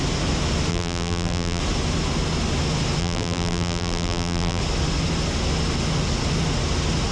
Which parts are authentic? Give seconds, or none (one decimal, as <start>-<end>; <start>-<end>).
0.0-0.7; 1.6-3.0; 4.6-7.1